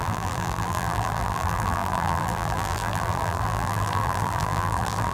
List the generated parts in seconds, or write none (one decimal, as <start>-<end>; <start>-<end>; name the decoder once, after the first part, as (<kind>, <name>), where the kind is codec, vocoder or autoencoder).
0.0-5.1 (vocoder, BigVGAN v2)